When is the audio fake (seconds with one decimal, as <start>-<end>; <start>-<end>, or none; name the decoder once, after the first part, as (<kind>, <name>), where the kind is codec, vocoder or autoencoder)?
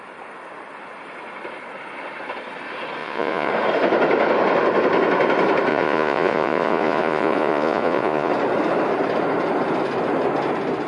3.0-3.5 (vocoder, Vocos); 5.7-8.3